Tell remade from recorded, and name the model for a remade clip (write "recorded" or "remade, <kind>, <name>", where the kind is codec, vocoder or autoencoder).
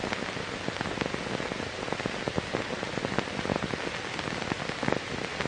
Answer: recorded